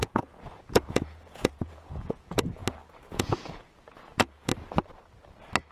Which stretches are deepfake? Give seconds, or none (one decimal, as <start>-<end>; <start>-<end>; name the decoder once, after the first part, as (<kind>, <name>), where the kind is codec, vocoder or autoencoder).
0.0-2.6 (vocoder, Vocos); 3.1-4.5